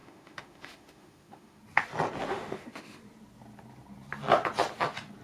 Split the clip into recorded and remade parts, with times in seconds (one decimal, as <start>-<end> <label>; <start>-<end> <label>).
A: 0.0-1.6 remade; 1.6-2.3 recorded; 2.3-3.0 remade; 3.0-5.2 recorded